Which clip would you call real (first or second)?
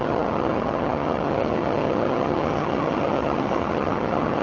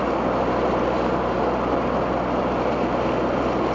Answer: second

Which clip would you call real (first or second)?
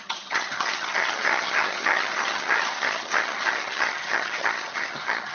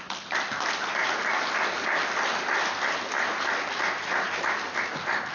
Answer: second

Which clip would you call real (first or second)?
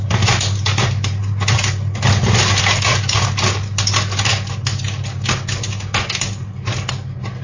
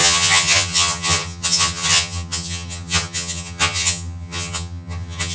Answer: first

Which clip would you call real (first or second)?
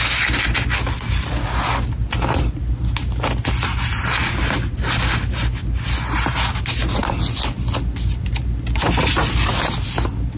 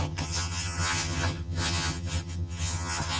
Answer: first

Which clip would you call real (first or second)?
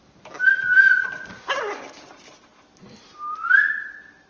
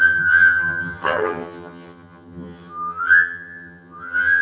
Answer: first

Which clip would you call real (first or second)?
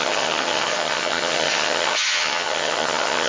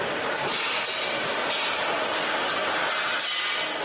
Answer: second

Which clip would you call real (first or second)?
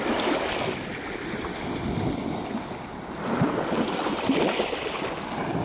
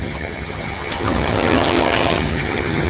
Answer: first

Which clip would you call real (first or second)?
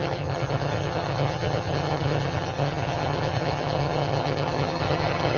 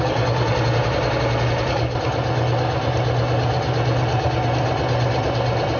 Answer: second